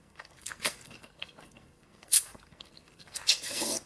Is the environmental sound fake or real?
fake